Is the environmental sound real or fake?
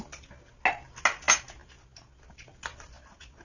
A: real